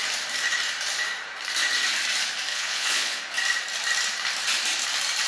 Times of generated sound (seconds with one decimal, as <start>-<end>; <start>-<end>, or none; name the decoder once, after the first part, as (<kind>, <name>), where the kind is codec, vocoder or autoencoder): 2.5-3.2 (vocoder, Vocos)